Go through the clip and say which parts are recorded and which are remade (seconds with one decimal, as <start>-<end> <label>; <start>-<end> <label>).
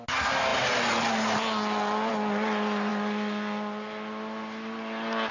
0.0-5.3 recorded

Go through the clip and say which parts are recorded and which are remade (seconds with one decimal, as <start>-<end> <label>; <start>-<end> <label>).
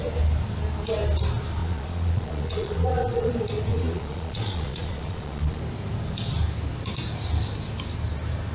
0.0-1.6 recorded; 1.6-3.3 remade; 3.3-3.7 recorded; 3.7-5.6 remade; 5.6-8.5 recorded